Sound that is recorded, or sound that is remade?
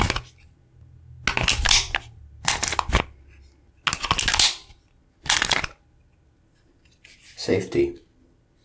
recorded